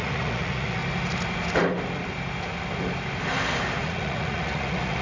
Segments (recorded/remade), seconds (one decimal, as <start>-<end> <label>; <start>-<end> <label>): 0.0-0.8 remade; 0.8-3.8 recorded; 3.8-5.0 remade